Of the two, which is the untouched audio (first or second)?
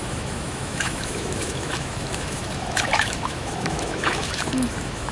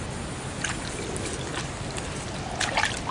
second